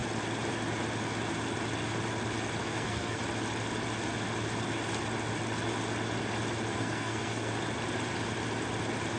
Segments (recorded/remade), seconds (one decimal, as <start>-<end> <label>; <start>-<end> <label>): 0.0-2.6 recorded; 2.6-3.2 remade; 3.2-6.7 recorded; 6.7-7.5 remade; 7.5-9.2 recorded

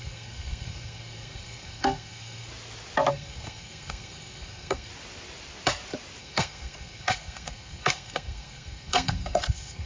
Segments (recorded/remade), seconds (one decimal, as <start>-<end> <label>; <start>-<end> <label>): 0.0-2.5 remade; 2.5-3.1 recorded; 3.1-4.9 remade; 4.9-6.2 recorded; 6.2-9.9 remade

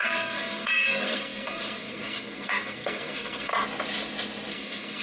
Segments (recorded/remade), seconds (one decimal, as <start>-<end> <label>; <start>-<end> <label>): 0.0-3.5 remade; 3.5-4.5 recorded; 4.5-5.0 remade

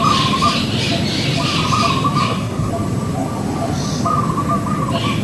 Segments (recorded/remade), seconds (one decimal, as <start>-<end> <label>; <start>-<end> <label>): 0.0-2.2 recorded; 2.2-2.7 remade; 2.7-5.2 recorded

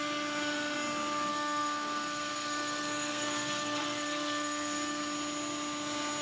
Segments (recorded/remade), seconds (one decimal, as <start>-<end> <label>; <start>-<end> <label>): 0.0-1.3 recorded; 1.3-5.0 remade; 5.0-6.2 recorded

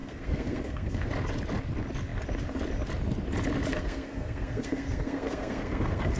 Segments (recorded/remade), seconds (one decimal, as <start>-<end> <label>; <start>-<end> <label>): 0.0-1.1 remade; 1.1-3.7 recorded; 3.7-6.2 remade